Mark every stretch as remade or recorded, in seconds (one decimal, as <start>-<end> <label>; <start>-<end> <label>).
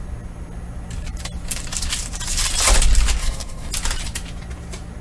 0.0-3.2 recorded; 3.2-3.7 remade; 3.7-5.0 recorded